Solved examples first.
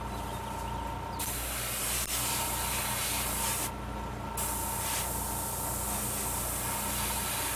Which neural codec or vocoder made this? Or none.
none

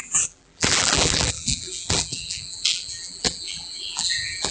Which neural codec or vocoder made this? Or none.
vocoder, BigVGAN v2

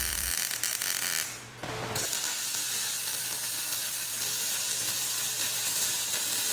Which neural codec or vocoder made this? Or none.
vocoder, BigVGAN v2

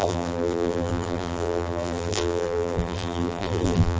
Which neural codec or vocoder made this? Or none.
vocoder, BigVGAN v2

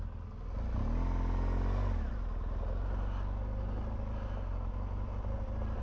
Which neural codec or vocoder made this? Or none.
none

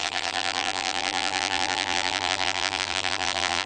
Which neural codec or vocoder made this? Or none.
vocoder, BigVGAN v2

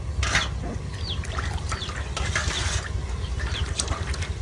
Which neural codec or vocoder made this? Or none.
none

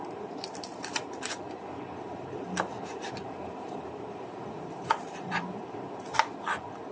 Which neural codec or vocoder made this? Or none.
vocoder, BigVGAN v2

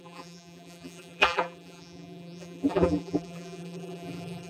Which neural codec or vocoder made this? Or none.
vocoder, BigVGAN v2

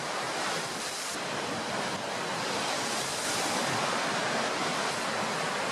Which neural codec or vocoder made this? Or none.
none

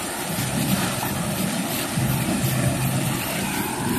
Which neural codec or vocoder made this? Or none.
vocoder, BigVGAN v2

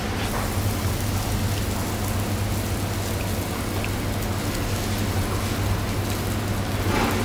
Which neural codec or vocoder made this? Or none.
none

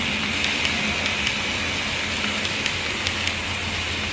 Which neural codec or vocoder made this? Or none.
none